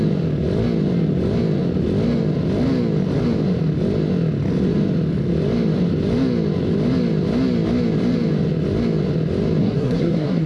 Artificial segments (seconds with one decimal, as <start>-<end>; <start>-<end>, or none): 9.6-10.5